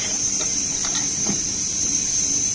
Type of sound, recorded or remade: remade